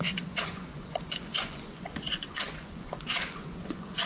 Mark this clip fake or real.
fake